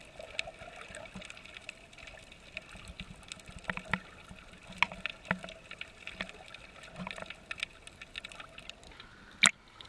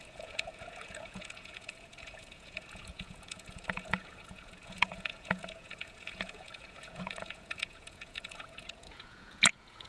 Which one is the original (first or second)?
first